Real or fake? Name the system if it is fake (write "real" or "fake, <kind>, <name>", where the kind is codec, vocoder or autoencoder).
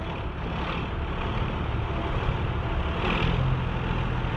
real